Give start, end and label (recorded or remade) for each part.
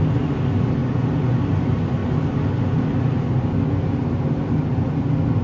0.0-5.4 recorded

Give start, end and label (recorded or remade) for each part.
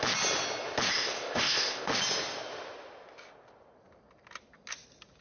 0.0-0.9 recorded; 0.9-1.9 remade; 1.9-5.2 recorded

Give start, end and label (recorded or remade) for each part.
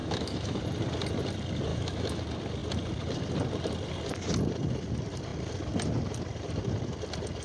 0.0-0.6 remade; 0.6-1.7 recorded; 1.7-2.2 remade; 2.2-7.4 recorded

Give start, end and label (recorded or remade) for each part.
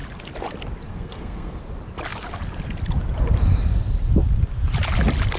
0.0-0.9 recorded; 0.9-1.6 remade; 1.6-5.4 recorded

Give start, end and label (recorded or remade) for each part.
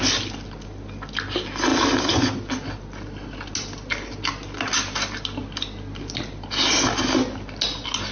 0.0-8.1 recorded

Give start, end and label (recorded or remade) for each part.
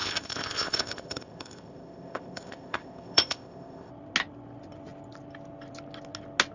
0.0-3.9 remade; 3.9-6.5 recorded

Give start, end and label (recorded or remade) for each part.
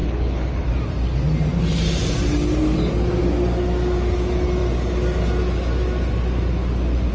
0.0-0.7 remade; 0.7-7.1 recorded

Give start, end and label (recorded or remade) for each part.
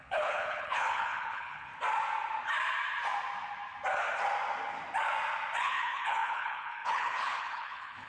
0.0-1.7 remade; 1.7-5.6 recorded; 5.6-8.1 remade